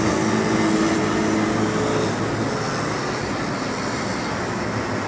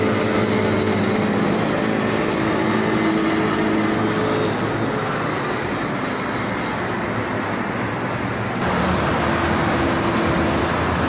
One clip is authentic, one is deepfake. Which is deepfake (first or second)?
first